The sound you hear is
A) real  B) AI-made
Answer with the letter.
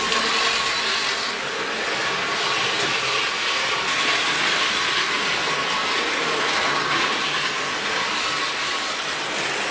A